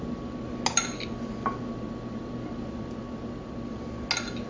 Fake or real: real